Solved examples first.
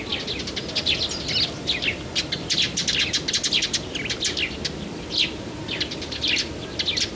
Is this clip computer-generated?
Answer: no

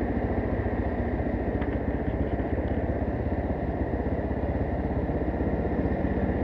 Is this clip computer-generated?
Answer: no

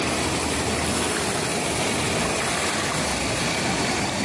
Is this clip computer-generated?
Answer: no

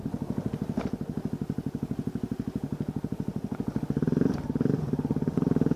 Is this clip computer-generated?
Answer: no